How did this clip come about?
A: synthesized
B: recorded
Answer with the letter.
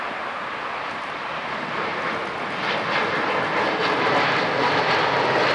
B